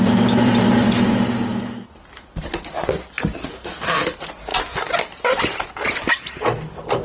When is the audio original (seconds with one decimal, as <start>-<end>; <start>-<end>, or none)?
1.5-3.5; 4.5-5.8